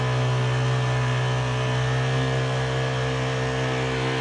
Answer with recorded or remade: recorded